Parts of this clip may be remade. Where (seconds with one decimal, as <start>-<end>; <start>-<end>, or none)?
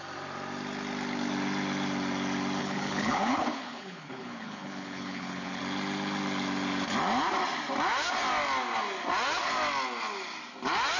2.6-5.6